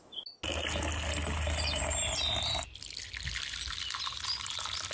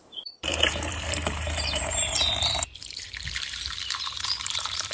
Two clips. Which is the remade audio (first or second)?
second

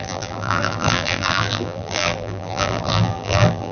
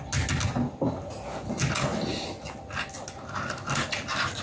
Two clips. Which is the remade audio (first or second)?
first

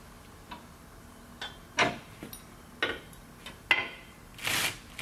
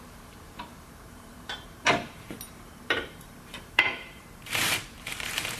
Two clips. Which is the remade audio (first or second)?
second